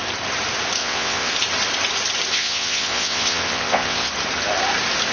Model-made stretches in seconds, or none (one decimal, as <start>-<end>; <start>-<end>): 0.8-1.3; 2.3-4.1